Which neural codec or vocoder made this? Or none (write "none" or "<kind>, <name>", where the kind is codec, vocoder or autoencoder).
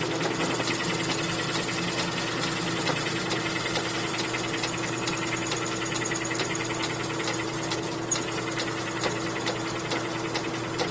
none